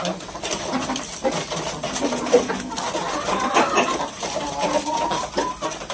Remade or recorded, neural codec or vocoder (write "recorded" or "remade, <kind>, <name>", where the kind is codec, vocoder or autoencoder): recorded